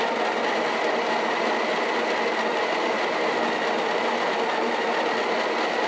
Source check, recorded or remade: recorded